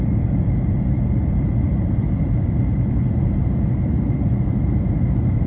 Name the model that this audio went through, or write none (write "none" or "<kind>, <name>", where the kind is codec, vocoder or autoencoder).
vocoder, BigVGAN v2